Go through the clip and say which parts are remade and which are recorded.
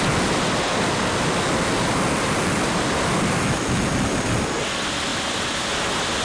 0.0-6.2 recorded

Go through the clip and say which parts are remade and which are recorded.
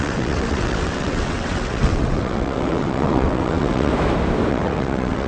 0.0-3.9 remade; 3.9-4.5 recorded; 4.5-5.3 remade